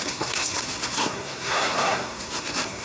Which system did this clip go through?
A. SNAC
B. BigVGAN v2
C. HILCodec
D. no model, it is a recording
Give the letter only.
A